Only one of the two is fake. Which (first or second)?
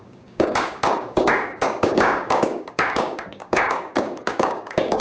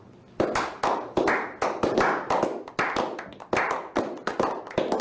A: first